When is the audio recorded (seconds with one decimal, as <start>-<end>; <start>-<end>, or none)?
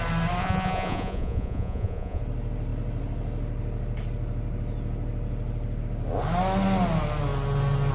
0.0-0.4; 2.2-7.9